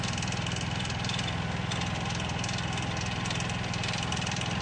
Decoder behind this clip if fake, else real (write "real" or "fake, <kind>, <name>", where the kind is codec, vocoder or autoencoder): real